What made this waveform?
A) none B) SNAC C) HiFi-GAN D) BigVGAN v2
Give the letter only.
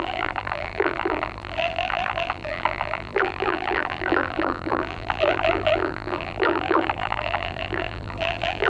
D